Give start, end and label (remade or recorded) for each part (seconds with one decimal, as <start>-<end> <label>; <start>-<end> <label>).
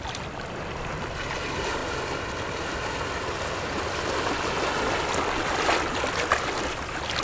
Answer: 0.0-7.2 recorded